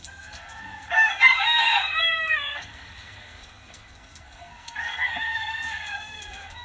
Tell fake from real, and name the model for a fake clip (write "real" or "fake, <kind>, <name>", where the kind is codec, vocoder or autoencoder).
fake, codec, SNAC